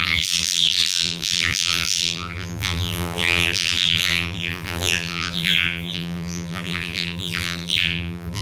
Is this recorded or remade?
remade